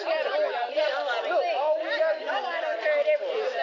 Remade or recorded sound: recorded